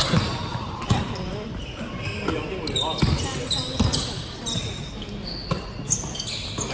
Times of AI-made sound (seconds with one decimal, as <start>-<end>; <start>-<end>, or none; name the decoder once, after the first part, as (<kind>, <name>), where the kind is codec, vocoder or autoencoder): 0.5-1.3 (vocoder, BigVGAN v2); 3.3-4.9